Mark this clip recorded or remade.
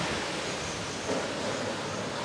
recorded